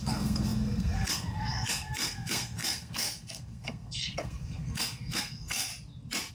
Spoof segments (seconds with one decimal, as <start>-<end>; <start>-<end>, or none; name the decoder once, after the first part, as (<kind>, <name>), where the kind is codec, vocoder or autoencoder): 0.0-5.7 (codec, SNAC)